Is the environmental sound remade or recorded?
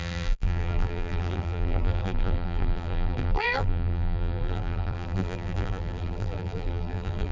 remade